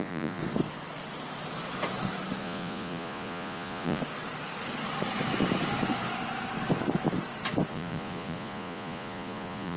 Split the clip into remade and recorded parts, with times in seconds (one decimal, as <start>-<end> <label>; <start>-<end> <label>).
0.0-0.4 remade; 0.4-2.4 recorded; 2.4-4.0 remade; 4.0-7.7 recorded; 7.7-9.8 remade